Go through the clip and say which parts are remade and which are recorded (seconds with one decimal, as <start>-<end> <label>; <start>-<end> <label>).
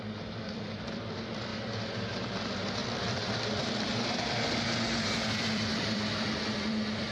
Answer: 0.0-1.5 remade; 1.5-2.1 recorded; 2.1-7.1 remade